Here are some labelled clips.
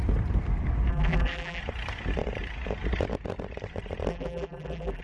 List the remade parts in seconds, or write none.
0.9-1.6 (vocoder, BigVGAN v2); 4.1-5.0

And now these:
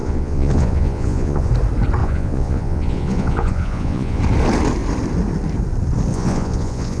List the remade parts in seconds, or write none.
0.0-1.5 (vocoder, Vocos); 2.0-4.2; 6.1-7.0

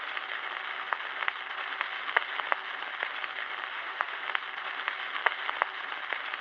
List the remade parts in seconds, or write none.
3.7-4.2 (autoencoder, DAC-VAE)

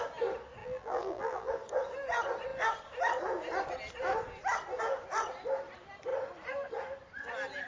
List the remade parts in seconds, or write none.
0.6-1.5 (vocoder, BigVGAN v2)

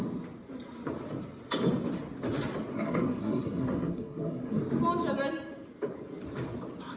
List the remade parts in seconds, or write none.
2.7-4.6 (codec, SNAC)

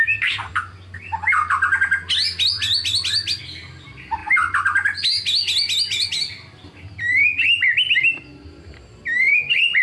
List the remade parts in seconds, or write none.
none

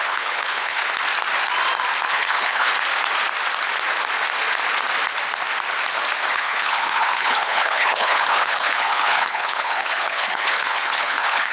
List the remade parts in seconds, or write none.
0.0-0.8 (codec, HILCodec); 2.1-2.7; 6.3-11.5

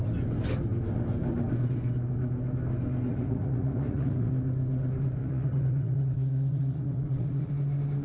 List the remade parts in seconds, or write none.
3.1-4.3 (vocoder, Vocos); 5.2-7.5